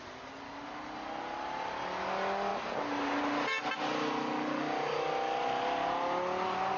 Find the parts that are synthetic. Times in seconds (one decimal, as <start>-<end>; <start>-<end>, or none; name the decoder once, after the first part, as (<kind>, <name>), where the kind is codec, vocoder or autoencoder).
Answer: none